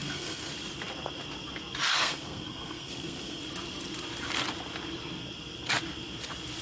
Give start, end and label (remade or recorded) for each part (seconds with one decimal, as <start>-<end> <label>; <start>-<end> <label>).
0.0-0.5 remade; 0.5-1.9 recorded; 1.9-3.4 remade; 3.4-6.6 recorded